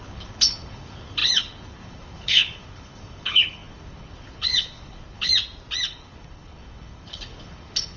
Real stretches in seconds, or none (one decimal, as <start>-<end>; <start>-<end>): 5.3-5.8